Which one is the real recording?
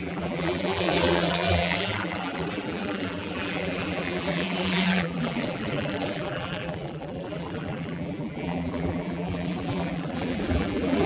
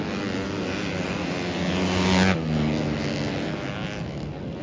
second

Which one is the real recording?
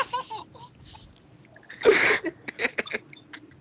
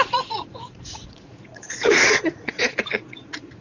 first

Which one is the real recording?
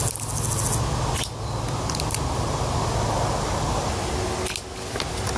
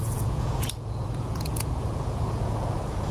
first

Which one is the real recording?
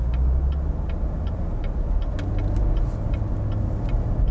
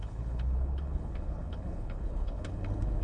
first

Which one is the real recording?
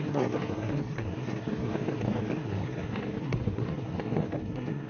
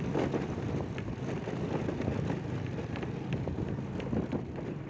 second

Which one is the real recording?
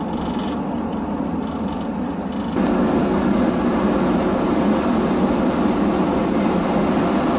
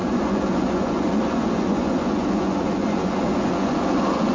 first